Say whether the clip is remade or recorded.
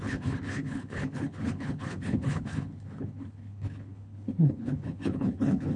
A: remade